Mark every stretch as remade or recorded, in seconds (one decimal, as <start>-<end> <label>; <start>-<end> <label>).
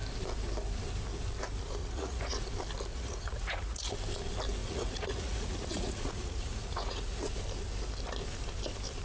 0.0-1.8 recorded; 1.8-2.4 remade; 2.4-2.9 recorded; 2.9-3.9 remade; 3.9-4.6 recorded; 4.6-7.3 remade; 7.3-9.0 recorded